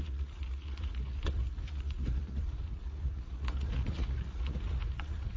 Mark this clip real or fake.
fake